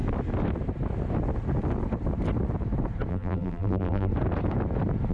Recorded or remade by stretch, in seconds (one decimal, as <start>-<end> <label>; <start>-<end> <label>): 0.0-3.1 recorded; 3.1-4.1 remade; 4.1-5.1 recorded